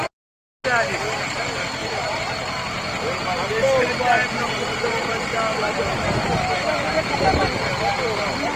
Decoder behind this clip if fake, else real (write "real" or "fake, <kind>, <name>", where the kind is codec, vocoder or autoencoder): real